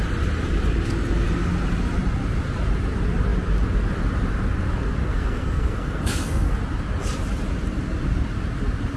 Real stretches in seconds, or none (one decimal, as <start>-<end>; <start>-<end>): 0.0-5.0; 6.6-9.0